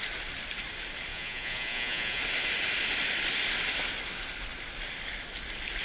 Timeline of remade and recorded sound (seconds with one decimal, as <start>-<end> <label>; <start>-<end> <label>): 0.0-1.1 recorded; 1.1-2.2 remade; 2.2-5.8 recorded